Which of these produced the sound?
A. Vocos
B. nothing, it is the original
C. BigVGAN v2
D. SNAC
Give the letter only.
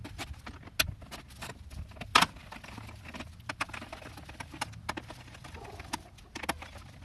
B